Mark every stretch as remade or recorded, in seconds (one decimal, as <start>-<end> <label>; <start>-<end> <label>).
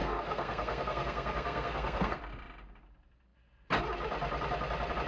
0.0-2.2 remade; 2.2-5.1 recorded